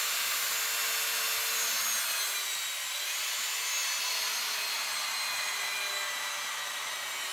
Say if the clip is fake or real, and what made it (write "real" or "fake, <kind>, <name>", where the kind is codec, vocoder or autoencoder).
real